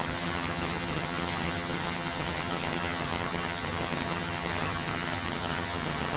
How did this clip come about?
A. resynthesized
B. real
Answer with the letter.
A